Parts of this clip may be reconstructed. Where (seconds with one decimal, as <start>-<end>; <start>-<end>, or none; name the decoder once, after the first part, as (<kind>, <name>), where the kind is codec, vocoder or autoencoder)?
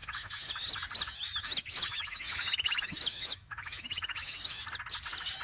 0.0-0.5 (autoencoder, DAC-VAE); 1.4-4.6